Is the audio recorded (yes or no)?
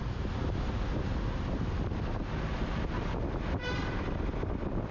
yes